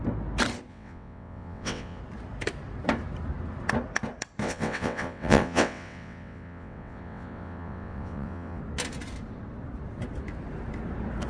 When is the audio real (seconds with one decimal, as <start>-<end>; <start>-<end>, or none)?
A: 0.0-0.7; 2.0-4.4; 8.6-11.3